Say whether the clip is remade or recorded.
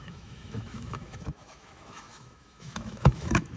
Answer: remade